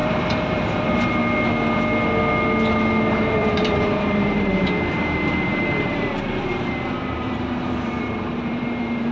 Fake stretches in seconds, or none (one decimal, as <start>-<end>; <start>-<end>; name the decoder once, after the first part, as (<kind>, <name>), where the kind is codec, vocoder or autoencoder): 0.0-1.2 (vocoder, BigVGAN v2); 3.1-9.1

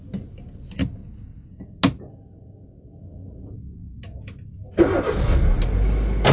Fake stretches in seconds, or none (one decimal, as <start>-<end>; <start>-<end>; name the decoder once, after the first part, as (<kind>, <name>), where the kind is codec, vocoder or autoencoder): none